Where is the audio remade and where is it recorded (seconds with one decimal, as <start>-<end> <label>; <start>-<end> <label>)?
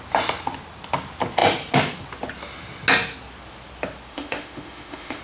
0.0-4.1 recorded; 4.1-5.2 remade